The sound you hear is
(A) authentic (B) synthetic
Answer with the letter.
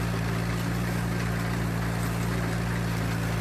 A